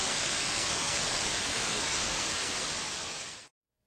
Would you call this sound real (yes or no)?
no